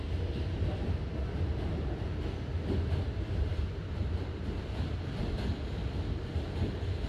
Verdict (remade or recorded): recorded